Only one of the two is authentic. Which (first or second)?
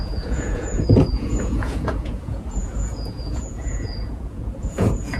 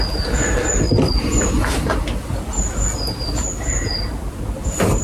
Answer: second